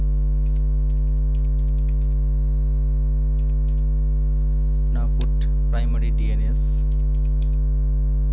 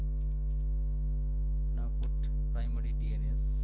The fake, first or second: second